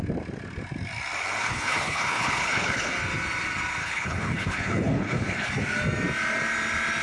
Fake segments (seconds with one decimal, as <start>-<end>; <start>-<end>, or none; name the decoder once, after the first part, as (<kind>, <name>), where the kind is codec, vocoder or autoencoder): 1.4-2.9 (codec, HILCodec); 3.8-5.5